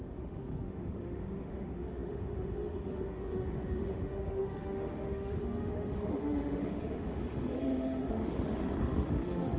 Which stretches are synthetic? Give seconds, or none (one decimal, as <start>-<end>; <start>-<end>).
0.0-9.6